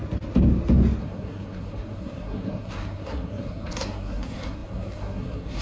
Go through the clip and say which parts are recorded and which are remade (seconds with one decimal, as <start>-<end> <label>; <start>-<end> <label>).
0.0-1.0 recorded; 1.0-5.6 remade